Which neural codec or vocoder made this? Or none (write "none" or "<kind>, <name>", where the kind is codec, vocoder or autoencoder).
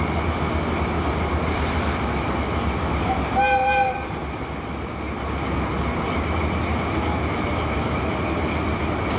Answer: none